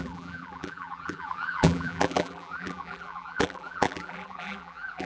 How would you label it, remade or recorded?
remade